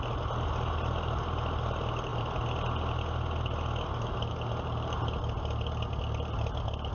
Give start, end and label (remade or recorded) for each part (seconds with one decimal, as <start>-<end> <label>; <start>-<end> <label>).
0.0-6.9 recorded